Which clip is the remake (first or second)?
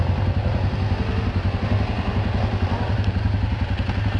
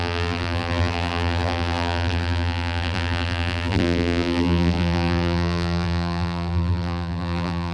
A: second